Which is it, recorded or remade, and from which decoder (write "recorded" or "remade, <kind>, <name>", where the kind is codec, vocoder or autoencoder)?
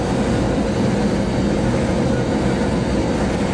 recorded